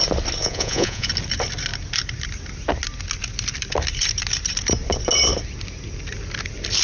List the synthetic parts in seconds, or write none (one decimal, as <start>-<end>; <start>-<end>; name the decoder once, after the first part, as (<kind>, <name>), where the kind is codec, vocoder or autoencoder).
0.4-1.1 (vocoder, Vocos)

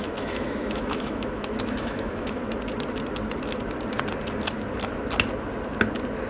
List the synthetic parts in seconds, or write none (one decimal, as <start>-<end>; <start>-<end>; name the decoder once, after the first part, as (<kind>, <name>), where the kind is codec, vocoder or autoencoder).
0.0-2.4 (autoencoder, DAC-VAE)